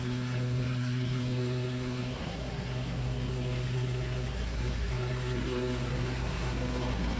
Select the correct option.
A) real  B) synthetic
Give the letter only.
B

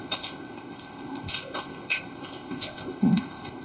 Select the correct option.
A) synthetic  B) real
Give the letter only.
A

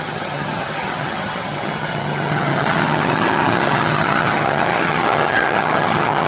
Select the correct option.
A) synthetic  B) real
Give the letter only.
A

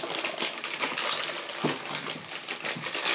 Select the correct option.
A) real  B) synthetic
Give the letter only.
A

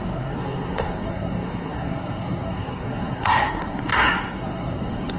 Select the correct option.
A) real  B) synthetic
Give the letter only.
B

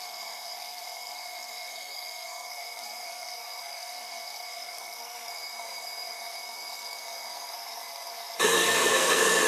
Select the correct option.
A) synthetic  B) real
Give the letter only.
A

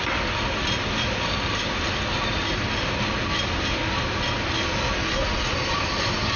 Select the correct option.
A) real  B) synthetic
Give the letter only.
A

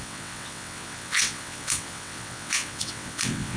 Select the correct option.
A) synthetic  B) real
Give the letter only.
A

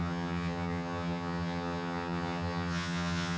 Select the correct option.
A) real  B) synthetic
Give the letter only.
B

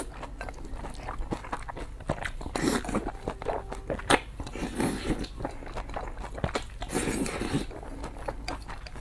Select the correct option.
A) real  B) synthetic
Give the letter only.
A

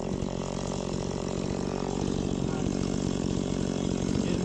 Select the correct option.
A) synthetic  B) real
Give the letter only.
A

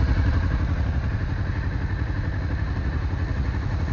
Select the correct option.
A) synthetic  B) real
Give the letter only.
A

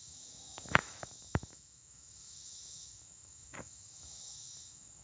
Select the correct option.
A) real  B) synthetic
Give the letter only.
B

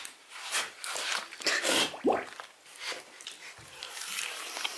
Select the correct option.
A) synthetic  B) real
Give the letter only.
A